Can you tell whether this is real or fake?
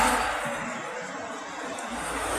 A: real